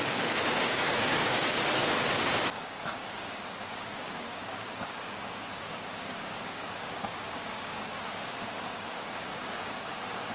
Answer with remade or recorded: remade